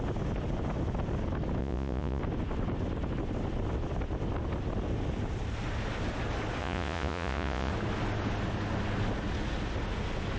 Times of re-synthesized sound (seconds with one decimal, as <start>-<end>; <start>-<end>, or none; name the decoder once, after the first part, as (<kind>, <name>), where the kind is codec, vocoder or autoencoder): 1.6-2.2 (vocoder, Vocos); 6.6-7.7